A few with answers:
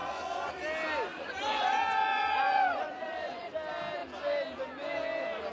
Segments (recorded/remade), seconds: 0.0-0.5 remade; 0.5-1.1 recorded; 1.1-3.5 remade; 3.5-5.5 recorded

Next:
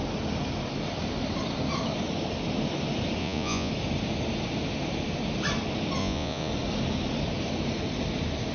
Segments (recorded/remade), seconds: 0.0-3.2 recorded; 3.2-3.7 remade; 3.7-6.0 recorded; 6.0-6.5 remade; 6.5-8.5 recorded

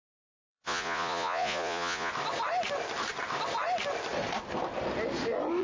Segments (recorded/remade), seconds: 0.0-2.1 remade; 2.1-5.6 recorded